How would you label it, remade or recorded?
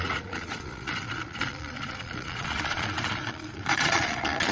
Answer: remade